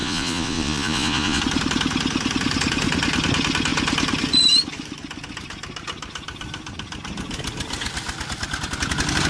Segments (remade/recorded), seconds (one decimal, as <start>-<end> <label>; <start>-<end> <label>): 0.0-1.4 remade; 1.4-9.3 recorded